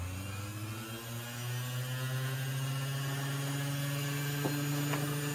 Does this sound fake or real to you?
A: real